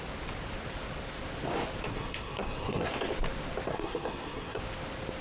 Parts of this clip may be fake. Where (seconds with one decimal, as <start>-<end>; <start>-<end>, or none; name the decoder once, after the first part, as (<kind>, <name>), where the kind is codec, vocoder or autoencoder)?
1.9-2.9 (codec, SNAC); 3.7-4.6